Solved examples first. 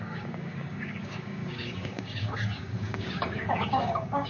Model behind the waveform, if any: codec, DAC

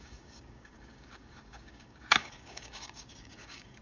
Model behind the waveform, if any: codec, DAC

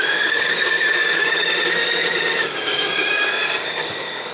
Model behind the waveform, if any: codec, DAC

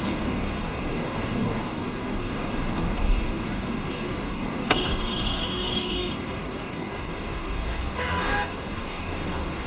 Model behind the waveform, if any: codec, DAC